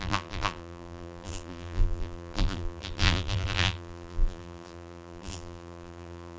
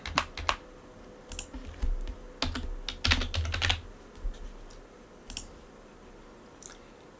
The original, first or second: second